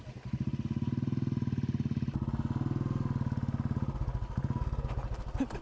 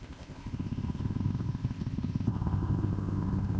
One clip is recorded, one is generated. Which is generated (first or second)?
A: second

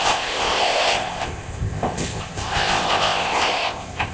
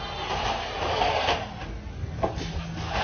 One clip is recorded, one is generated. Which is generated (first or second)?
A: first